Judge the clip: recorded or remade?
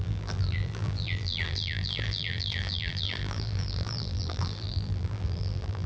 remade